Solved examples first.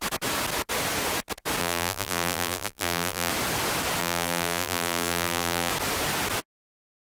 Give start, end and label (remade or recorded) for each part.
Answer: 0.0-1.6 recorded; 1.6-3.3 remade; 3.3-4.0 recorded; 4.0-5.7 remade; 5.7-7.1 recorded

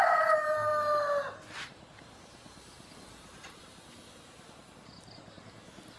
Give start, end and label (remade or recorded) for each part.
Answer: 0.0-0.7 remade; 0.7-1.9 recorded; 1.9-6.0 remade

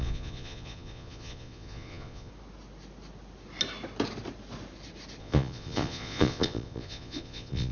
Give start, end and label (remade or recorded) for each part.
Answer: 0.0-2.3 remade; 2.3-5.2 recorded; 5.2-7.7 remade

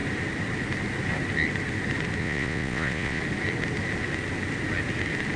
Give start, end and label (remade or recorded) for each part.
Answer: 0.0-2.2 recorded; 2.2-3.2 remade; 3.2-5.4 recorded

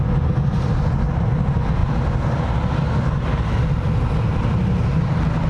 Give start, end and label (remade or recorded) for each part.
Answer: 0.0-5.5 recorded

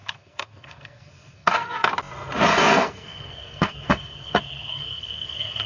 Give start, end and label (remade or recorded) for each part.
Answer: 0.0-1.9 remade; 1.9-2.5 recorded; 2.5-5.7 remade

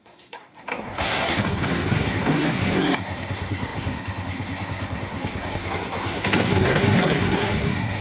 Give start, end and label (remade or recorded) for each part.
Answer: 0.0-8.0 remade

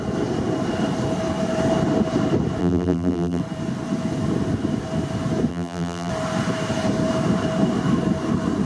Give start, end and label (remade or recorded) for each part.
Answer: 0.0-2.6 recorded; 2.6-3.4 remade; 3.4-5.5 recorded; 5.5-6.1 remade; 6.1-8.7 recorded